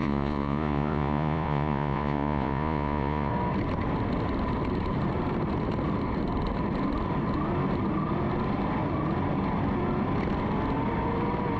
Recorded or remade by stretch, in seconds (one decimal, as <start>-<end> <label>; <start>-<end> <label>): 0.0-3.3 remade; 3.3-11.6 recorded